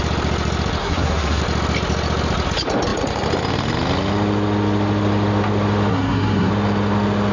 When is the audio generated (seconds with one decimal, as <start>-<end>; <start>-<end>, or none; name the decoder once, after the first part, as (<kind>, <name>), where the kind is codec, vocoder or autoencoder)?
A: 0.8-1.4 (codec, SNAC); 5.9-6.5